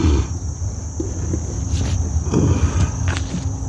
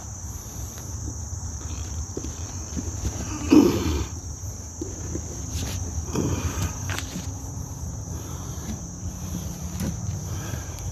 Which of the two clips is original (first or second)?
first